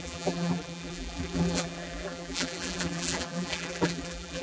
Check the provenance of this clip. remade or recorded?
remade